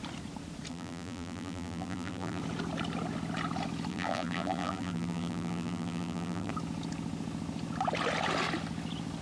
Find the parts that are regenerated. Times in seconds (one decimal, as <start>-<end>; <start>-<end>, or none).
0.7-2.4; 3.9-6.5